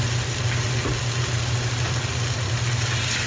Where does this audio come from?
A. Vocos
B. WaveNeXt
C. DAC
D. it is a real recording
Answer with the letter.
D